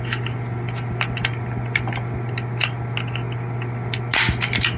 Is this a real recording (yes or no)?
yes